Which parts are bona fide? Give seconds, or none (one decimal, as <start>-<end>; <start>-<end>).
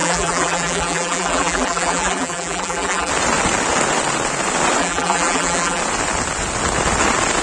3.1-4.8; 5.8-7.4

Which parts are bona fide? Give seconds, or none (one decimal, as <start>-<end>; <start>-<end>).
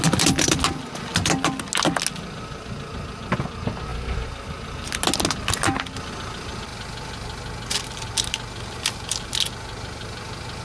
0.0-10.6